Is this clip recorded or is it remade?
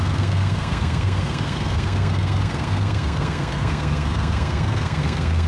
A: remade